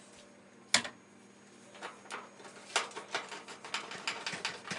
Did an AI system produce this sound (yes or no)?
no